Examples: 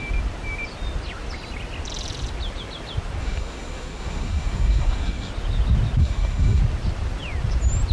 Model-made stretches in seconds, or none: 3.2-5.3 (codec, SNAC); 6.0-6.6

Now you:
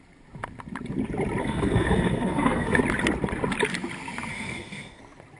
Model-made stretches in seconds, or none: 1.4-2.8 (codec, SNAC); 4.3-5.0